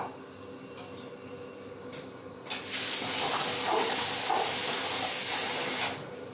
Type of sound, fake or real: real